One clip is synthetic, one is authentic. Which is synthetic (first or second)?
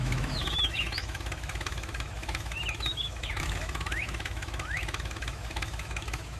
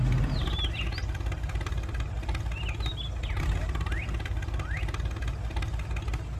first